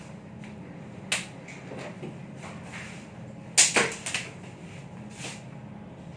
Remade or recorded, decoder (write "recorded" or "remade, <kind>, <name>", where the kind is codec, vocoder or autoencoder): recorded